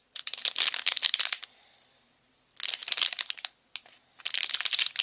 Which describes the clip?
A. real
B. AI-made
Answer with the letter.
A